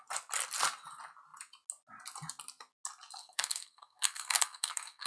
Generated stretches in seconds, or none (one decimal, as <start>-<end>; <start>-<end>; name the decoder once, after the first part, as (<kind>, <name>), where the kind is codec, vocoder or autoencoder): 3.2-5.1 (codec, SNAC)